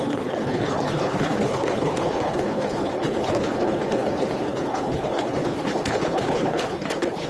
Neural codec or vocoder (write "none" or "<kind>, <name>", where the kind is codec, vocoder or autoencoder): codec, HILCodec